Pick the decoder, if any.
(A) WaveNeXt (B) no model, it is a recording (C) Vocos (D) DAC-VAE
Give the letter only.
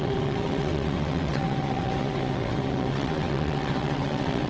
A